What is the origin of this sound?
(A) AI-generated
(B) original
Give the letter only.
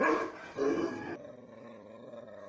B